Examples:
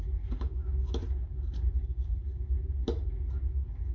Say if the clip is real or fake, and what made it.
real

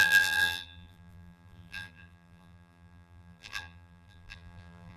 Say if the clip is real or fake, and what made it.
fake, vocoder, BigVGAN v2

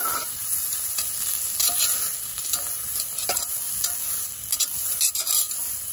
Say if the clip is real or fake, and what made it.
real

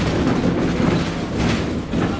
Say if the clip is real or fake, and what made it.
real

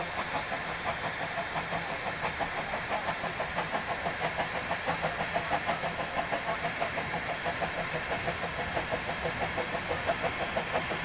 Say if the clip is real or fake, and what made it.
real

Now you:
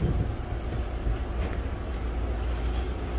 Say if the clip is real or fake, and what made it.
real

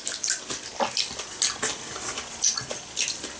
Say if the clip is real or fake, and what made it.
real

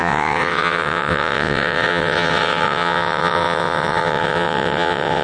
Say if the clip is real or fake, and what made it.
fake, vocoder, WaveNeXt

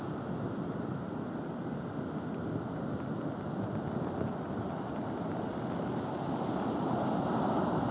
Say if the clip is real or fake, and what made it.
real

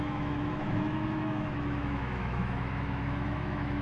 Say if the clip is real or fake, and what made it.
fake, autoencoder, DAC-VAE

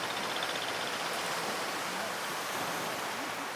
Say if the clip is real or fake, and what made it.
real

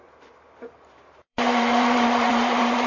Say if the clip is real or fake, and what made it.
fake, vocoder, BigVGAN v2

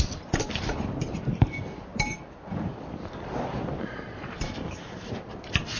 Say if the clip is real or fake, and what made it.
fake, vocoder, BigVGAN v2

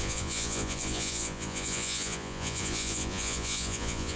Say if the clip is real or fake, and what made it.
fake, vocoder, Vocos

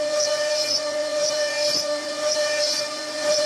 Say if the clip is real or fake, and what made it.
fake, vocoder, Vocos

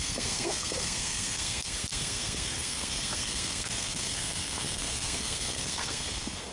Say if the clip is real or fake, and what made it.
fake, codec, SNAC